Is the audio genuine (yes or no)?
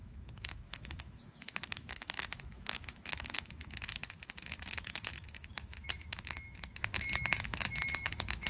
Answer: no